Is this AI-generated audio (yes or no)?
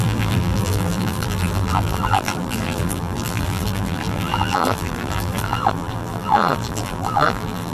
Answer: yes